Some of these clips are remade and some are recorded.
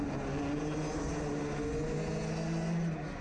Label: recorded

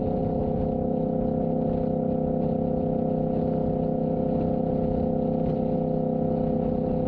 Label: recorded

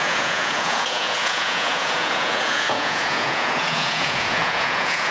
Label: remade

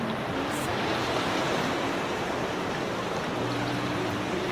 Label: remade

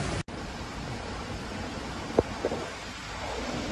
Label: recorded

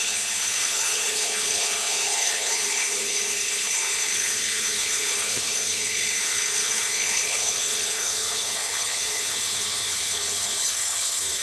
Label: remade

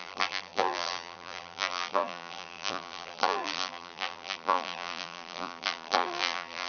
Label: remade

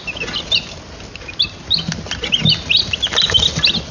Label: recorded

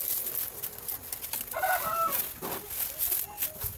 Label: recorded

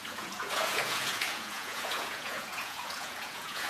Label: remade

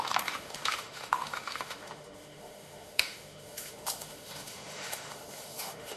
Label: remade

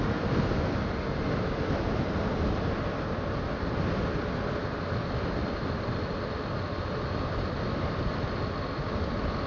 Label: recorded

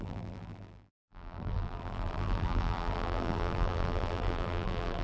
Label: remade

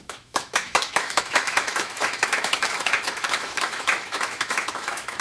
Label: remade